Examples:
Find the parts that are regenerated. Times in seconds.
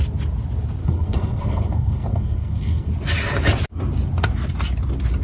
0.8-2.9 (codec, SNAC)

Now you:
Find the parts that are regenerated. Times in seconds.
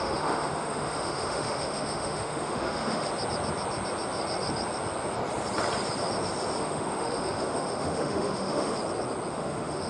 0.0-3.1 (autoencoder, DAC-VAE); 6.6-8.7; 9.3-9.9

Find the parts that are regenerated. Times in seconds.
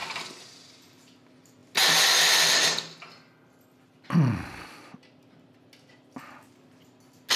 none